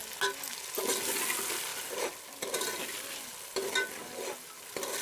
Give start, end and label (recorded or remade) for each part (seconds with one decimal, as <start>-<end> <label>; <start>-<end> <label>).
0.0-5.0 recorded

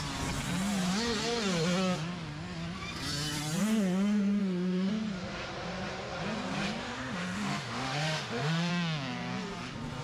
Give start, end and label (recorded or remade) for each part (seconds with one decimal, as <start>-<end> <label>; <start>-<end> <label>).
0.0-4.4 recorded; 4.4-4.9 remade; 4.9-6.8 recorded; 6.8-8.7 remade; 8.7-10.0 recorded

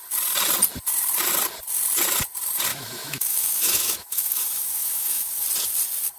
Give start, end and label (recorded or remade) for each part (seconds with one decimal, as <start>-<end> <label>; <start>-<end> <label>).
0.0-2.7 recorded; 2.7-5.3 remade; 5.3-6.2 recorded

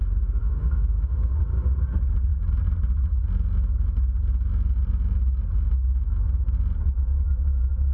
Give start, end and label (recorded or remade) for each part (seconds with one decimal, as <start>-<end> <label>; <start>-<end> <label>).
0.0-0.4 recorded; 0.4-1.3 remade; 1.3-7.9 recorded